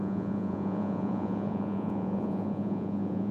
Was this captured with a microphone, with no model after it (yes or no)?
no